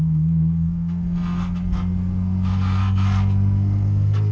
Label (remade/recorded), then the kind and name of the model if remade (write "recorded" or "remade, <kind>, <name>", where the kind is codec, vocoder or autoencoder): remade, codec, SNAC